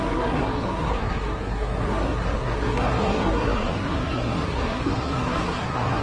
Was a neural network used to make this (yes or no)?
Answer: yes